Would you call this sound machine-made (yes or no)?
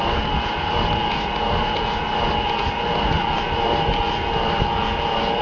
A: no